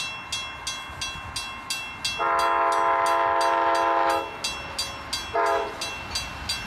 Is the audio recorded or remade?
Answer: recorded